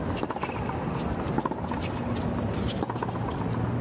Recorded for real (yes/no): yes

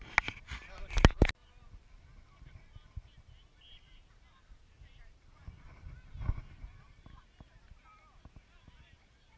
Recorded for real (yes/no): yes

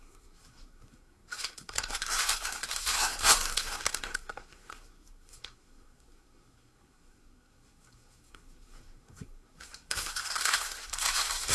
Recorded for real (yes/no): no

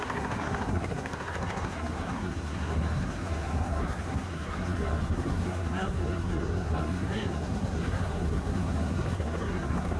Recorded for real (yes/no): no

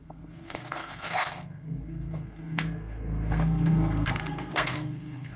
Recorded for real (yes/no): no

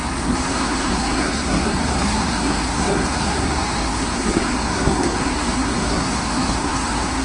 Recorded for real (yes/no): no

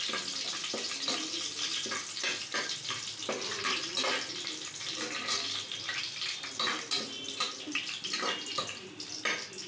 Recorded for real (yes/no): yes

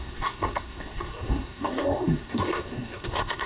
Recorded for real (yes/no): no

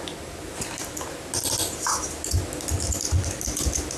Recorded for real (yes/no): yes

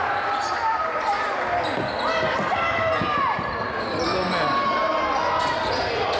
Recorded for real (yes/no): yes